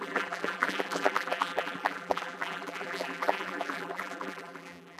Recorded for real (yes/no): no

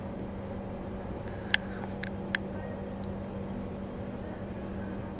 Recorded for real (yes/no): yes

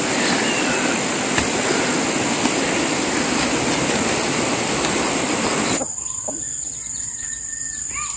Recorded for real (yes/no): no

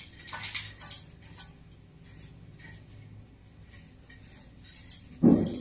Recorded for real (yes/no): yes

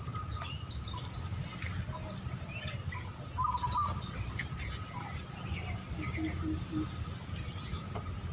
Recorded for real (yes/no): yes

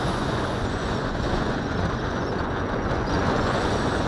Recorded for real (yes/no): no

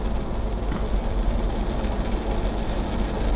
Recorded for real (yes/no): yes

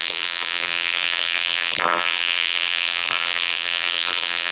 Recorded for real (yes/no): no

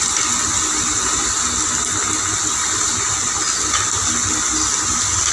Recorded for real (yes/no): yes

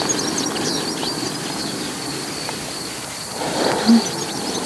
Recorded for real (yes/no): yes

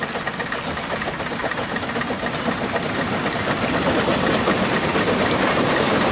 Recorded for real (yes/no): yes